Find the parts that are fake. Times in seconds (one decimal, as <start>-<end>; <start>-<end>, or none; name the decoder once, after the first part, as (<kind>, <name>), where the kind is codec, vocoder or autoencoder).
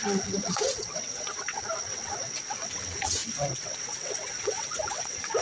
0.0-5.4 (vocoder, WaveNeXt)